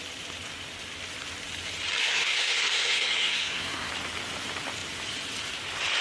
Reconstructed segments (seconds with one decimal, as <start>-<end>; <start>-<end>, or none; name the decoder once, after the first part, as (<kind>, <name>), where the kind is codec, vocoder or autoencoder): 2.0-3.9 (codec, SNAC)